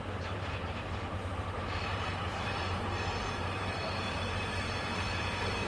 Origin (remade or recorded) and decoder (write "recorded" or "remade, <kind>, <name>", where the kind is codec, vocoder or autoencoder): remade, vocoder, BigVGAN v2